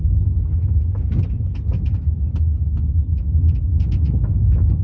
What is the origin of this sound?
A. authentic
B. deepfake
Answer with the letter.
A